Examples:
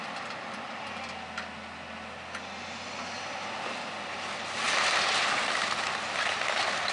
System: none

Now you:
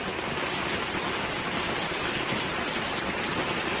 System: none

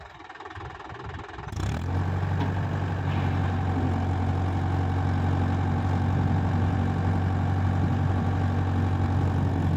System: none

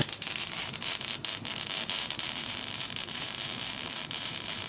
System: vocoder, BigVGAN v2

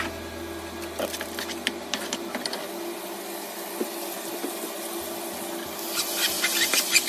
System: none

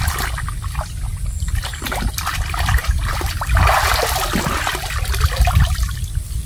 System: none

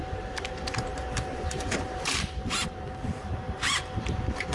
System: vocoder, BigVGAN v2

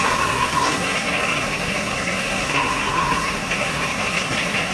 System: codec, SNAC